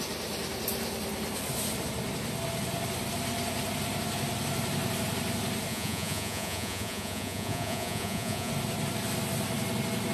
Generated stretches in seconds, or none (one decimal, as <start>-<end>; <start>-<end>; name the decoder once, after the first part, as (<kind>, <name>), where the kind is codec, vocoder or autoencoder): 5.7-8.5 (vocoder, Vocos)